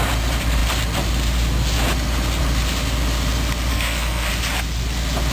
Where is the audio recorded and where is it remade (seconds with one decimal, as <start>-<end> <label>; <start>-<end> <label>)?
0.0-3.7 recorded; 3.7-4.3 remade; 4.3-5.3 recorded